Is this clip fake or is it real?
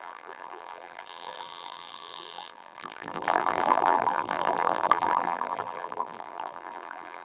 fake